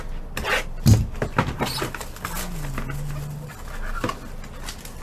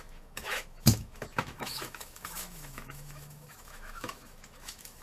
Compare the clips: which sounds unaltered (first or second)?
first